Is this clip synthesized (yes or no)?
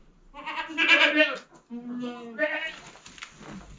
no